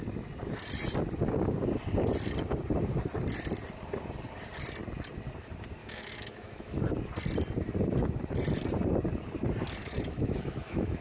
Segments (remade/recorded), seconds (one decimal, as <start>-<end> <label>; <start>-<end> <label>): 0.0-5.8 recorded; 5.8-6.8 remade; 6.8-9.8 recorded; 9.8-11.0 remade